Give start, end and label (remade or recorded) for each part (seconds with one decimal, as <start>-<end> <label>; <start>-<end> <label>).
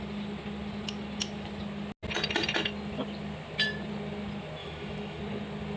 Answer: 0.0-4.6 recorded; 4.6-5.2 remade; 5.2-5.8 recorded